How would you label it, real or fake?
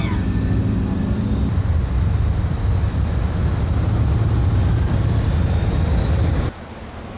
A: real